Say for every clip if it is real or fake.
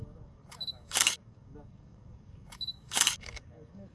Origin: fake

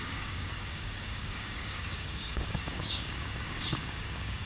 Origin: fake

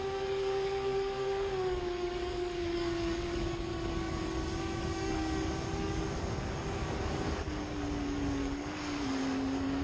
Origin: fake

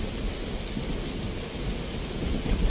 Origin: real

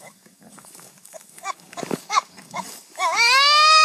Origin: fake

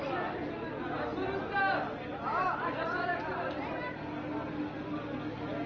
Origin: real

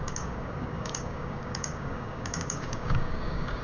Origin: fake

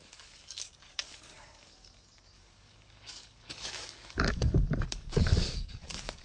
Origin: fake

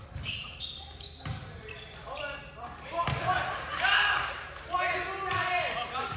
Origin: real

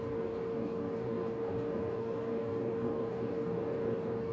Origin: fake